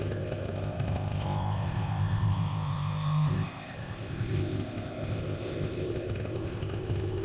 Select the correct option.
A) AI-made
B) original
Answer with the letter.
A